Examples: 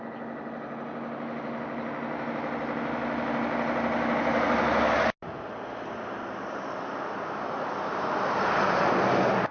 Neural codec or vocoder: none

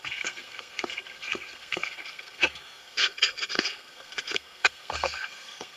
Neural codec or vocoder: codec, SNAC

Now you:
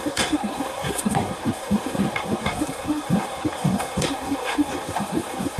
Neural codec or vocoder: codec, SNAC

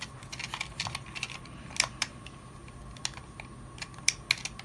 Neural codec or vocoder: none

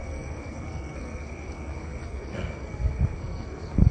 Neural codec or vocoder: codec, SNAC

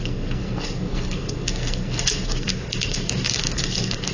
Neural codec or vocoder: codec, SNAC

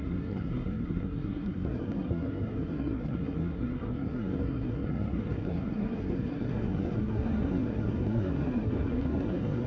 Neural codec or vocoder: codec, SNAC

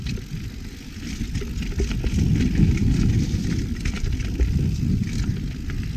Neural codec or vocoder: none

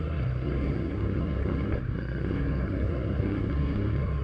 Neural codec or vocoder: codec, SNAC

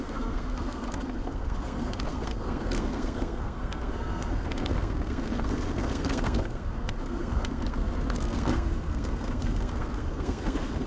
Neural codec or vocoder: codec, SNAC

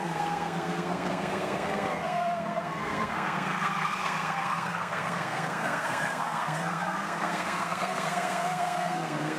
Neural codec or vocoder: codec, SNAC